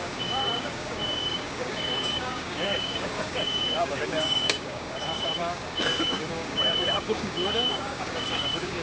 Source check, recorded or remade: remade